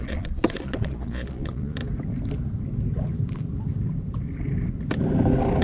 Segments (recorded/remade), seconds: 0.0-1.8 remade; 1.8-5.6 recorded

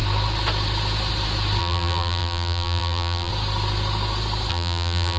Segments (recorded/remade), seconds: 0.0-1.6 recorded; 1.6-3.3 remade; 3.3-4.5 recorded; 4.5-5.2 remade